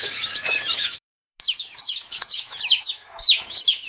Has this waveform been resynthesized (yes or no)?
yes